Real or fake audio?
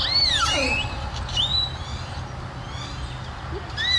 real